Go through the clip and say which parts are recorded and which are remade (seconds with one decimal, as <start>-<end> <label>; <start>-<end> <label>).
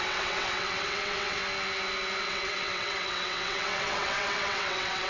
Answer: 0.0-1.4 remade; 1.4-2.2 recorded; 2.2-5.1 remade